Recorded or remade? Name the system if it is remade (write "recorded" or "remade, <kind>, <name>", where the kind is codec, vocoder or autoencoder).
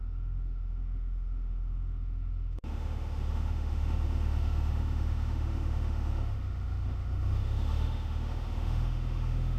remade, autoencoder, DAC-VAE